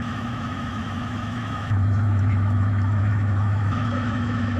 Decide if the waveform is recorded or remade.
remade